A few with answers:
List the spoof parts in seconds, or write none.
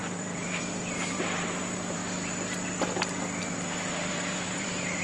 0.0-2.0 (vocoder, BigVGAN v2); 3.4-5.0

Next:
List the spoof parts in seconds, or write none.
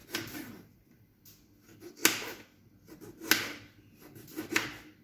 0.0-1.2 (vocoder, BigVGAN v2)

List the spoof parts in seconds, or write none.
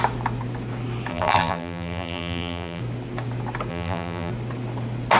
1.1-2.8 (vocoder, BigVGAN v2); 3.7-4.3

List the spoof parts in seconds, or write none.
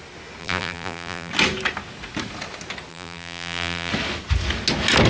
0.4-1.3 (vocoder, BigVGAN v2); 2.9-3.9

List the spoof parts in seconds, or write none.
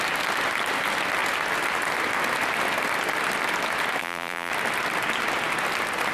4.0-4.5 (vocoder, BigVGAN v2)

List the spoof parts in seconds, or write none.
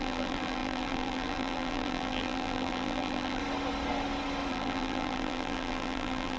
0.0-3.4 (vocoder, BigVGAN v2); 4.5-6.4